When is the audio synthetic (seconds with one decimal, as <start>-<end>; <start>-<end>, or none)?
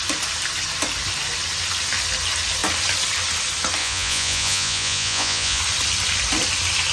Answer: 3.8-5.6